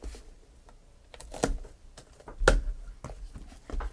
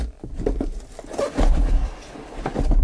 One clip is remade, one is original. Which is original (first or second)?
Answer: first